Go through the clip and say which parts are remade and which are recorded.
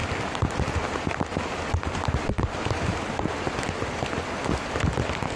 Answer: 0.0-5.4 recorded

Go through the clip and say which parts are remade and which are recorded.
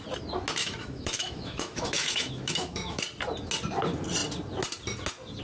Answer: 0.0-0.6 recorded; 0.6-3.0 remade; 3.0-5.4 recorded